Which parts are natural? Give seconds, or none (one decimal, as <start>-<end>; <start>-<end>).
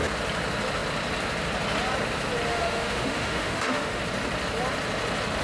0.0-2.5; 4.0-5.4